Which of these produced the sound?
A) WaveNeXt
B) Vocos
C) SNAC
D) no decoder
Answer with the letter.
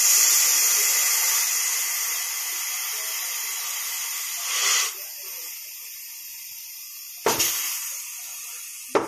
D